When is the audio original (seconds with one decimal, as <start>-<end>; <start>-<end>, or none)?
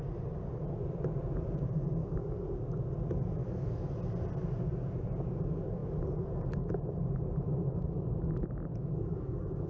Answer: 0.0-3.4; 3.9-8.7